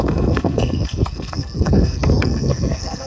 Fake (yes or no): yes